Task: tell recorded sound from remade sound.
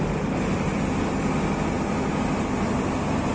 recorded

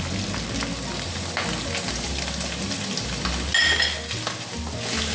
recorded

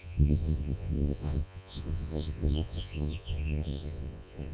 remade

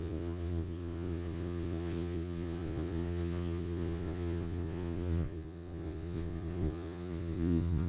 remade